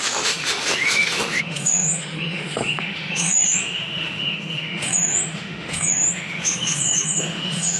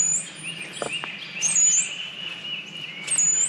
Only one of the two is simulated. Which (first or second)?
first